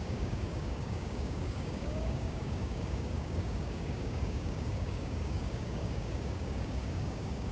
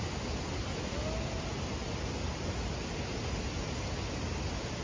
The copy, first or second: first